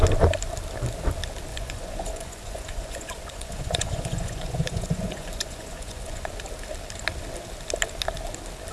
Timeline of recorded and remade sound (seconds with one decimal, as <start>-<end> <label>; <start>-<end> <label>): 0.0-1.5 recorded; 1.5-6.3 remade; 6.3-8.7 recorded